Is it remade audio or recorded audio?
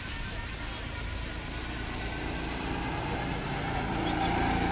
recorded